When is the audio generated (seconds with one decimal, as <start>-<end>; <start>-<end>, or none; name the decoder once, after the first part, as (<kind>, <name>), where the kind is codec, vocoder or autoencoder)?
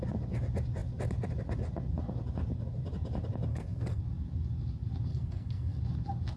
3.5-4.0 (codec, SNAC); 5.1-5.8